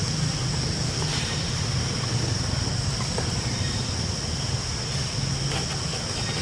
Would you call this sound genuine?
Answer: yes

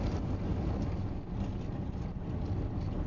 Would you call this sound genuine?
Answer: yes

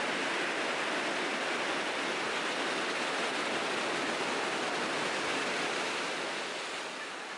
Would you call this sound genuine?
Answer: yes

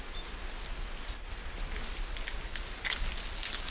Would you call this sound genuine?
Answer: yes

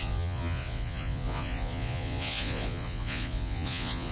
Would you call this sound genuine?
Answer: no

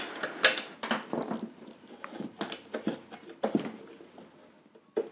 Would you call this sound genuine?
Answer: yes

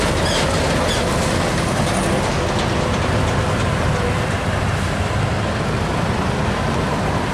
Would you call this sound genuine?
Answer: yes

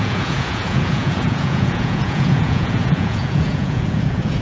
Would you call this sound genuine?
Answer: no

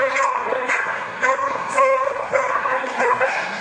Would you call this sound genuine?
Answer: no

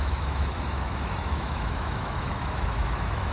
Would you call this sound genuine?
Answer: no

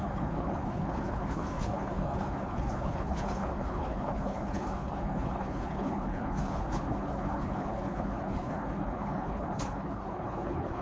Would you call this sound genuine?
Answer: no